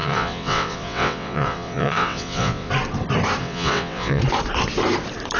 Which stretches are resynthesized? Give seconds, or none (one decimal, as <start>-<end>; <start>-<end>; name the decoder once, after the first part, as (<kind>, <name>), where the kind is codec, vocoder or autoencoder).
0.0-2.7 (vocoder, WaveNeXt); 3.4-4.2